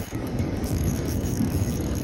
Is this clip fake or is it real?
fake